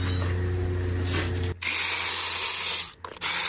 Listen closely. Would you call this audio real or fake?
real